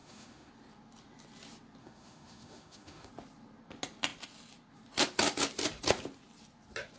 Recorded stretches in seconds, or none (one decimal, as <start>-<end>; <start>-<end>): 0.5-1.8; 3.1-7.0